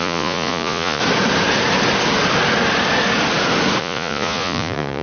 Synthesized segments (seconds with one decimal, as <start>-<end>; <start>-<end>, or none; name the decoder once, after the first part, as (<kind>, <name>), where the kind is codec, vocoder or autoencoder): 0.0-1.0 (vocoder, Vocos); 3.8-5.0